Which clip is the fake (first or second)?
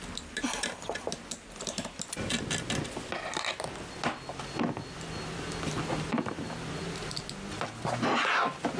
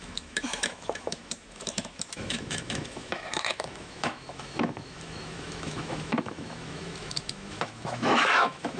second